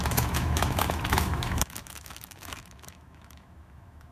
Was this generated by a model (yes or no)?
yes